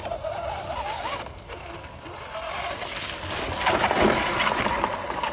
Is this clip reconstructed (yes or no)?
no